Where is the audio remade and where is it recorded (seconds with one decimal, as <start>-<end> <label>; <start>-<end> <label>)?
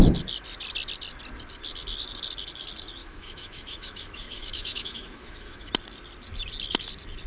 0.0-3.0 recorded; 3.0-5.7 remade; 5.7-7.3 recorded